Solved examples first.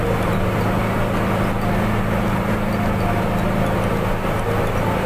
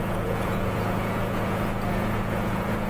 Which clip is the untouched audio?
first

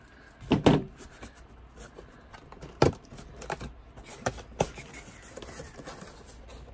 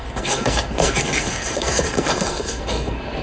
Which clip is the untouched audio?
first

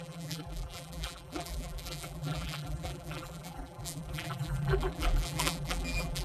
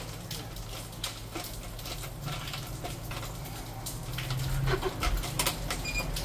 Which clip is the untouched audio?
second